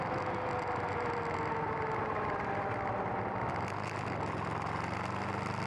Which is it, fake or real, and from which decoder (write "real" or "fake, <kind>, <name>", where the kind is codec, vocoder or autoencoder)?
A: real